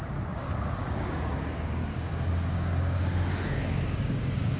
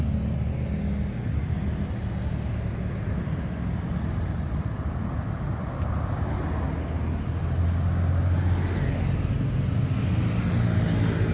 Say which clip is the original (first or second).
second